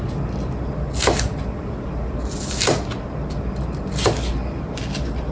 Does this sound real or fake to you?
real